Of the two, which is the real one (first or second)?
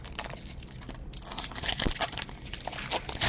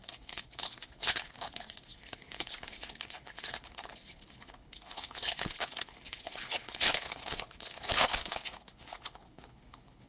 first